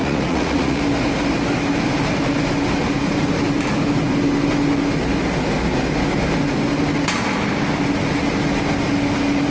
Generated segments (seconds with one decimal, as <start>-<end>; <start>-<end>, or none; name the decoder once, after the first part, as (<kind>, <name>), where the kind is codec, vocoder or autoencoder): 0.0-0.8 (vocoder, Vocos)